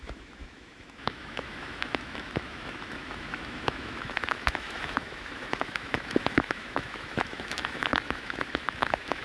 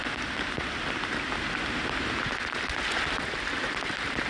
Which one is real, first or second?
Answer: second